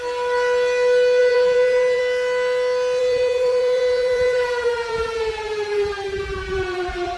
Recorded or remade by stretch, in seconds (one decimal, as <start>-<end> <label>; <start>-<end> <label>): 0.0-1.2 recorded; 1.2-2.0 remade; 2.0-3.0 recorded; 3.0-7.2 remade